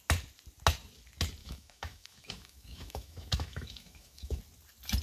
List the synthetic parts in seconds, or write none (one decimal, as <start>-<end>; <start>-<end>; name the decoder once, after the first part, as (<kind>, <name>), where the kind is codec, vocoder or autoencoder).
1.4-4.4 (autoencoder, DAC-VAE)